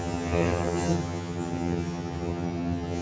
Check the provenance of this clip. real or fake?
fake